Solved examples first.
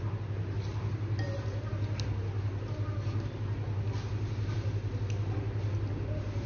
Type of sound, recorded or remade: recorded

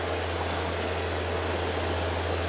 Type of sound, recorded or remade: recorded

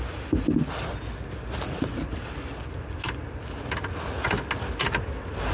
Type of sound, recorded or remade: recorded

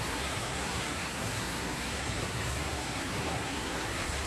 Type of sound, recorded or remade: remade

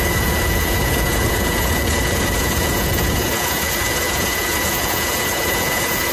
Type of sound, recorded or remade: remade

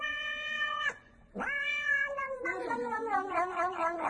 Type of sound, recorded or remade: remade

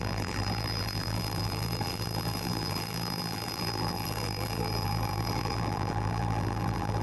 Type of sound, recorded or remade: remade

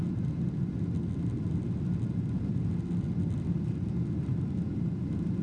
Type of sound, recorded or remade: recorded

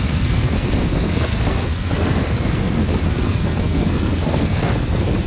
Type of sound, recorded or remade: remade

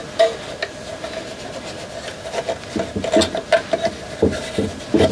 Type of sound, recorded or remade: recorded